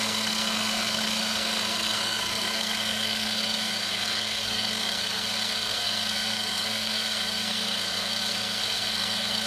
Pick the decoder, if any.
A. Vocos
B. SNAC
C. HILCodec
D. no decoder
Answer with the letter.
B